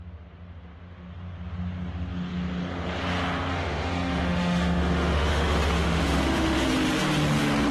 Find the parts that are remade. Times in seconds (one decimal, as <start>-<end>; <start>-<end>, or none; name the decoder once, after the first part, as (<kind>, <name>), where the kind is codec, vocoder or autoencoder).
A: 3.5-6.7 (autoencoder, DAC-VAE)